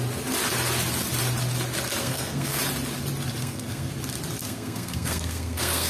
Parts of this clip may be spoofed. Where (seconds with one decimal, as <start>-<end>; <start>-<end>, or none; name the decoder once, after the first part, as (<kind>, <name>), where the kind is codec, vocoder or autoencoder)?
2.0-2.6 (codec, SNAC); 3.4-3.9; 4.4-5.9